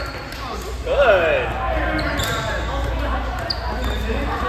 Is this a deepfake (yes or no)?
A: no